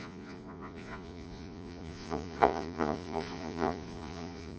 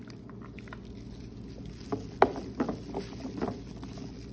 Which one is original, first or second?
second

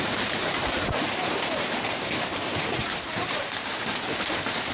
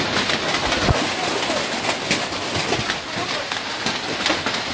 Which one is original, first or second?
second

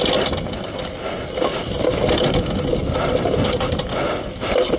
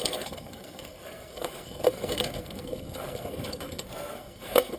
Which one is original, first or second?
first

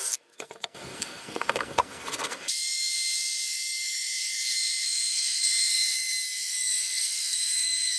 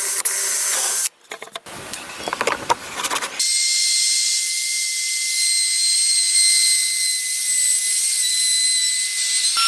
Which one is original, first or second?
second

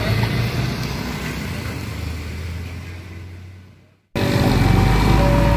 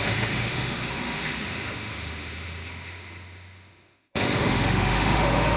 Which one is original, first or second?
first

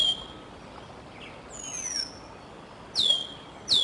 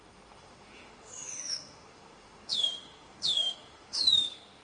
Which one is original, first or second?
first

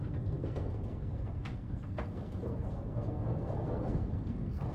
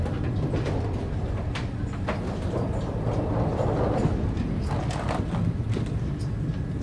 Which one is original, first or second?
second